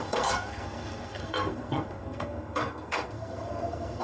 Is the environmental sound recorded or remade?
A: remade